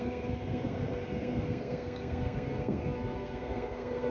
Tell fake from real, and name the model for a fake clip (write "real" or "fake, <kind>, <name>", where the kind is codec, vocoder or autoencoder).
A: fake, codec, SNAC